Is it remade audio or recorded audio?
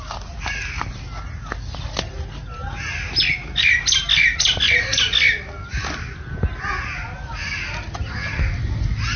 recorded